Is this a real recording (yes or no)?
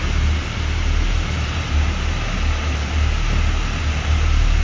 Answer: yes